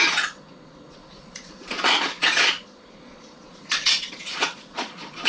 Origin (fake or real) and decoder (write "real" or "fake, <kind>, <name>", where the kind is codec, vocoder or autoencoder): fake, vocoder, Vocos